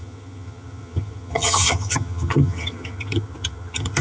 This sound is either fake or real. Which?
fake